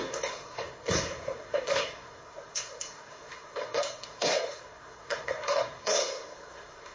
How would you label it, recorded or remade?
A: remade